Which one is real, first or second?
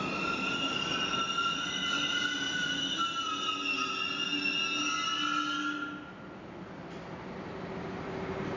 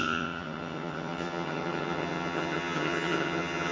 first